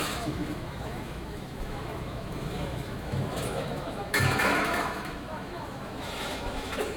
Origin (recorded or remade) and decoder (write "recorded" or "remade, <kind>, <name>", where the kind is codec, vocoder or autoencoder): remade, autoencoder, DAC-VAE